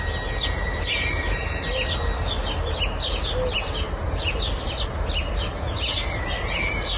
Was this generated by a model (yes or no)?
no